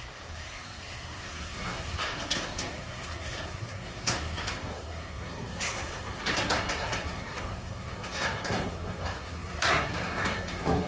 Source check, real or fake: fake